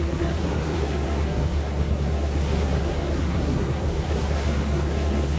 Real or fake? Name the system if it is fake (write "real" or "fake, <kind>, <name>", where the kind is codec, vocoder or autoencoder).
fake, codec, SNAC